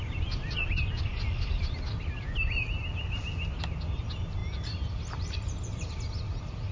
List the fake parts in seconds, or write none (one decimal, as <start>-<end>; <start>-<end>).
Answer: none